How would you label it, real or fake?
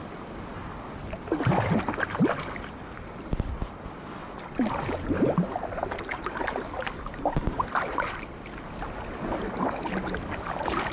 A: real